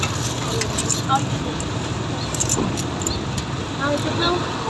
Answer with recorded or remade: recorded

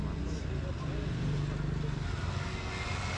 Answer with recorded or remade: recorded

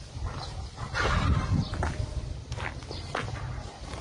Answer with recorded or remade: recorded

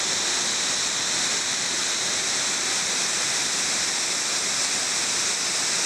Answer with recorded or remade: recorded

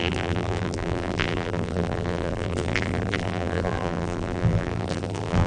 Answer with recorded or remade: remade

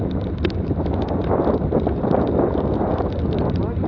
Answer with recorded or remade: remade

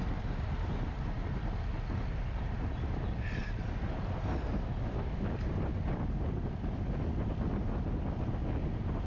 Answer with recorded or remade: recorded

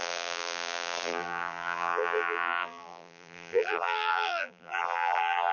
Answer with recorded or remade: remade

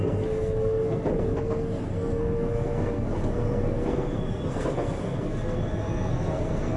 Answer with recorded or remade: remade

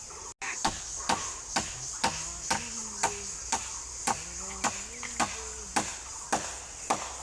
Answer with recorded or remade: recorded